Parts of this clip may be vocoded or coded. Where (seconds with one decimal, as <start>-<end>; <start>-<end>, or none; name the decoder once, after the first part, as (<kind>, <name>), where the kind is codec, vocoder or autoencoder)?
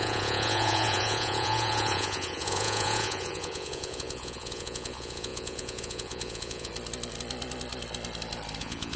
0.0-6.7 (vocoder, Vocos); 8.6-9.0